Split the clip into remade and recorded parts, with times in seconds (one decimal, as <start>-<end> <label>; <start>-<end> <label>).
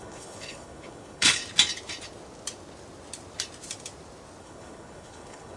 0.0-1.4 remade; 1.4-4.4 recorded; 4.4-5.6 remade